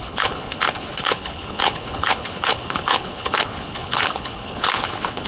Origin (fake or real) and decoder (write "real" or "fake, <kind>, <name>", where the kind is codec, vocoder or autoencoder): fake, codec, HILCodec